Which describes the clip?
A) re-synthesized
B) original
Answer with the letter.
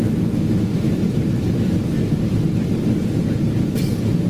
B